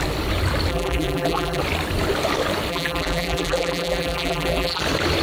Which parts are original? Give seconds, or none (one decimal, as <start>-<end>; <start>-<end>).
0.0-0.7; 1.6-2.7; 4.8-5.2